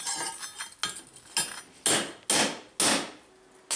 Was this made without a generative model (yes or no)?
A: yes